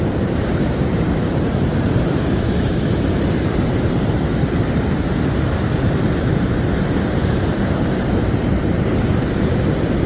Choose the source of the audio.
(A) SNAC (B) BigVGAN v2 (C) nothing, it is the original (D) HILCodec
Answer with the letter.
B